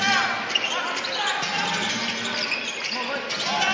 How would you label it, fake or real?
real